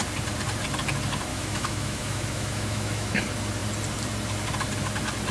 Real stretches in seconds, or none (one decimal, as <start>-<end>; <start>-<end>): 0.0-1.3; 3.2-5.3